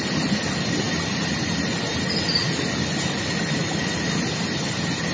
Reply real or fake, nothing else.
real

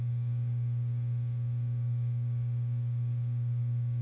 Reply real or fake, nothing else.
fake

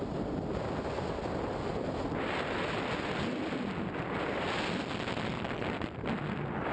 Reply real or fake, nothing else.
real